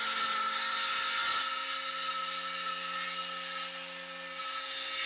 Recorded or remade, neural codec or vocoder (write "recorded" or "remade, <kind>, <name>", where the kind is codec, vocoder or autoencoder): recorded